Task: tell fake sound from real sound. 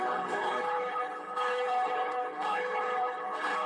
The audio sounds fake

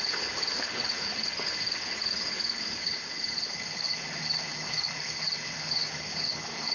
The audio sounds fake